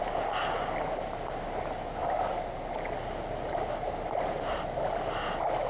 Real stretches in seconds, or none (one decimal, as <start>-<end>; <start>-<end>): 0.0-5.7